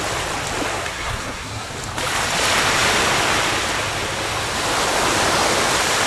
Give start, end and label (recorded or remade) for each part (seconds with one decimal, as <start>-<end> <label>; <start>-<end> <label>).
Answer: 0.0-0.7 recorded; 0.7-1.7 remade; 1.7-6.1 recorded